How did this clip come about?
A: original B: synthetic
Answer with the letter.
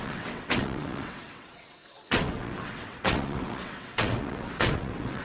B